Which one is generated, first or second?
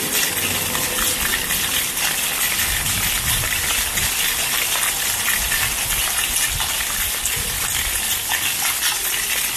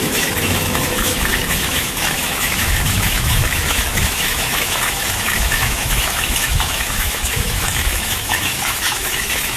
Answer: second